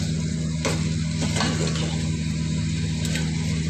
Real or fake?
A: real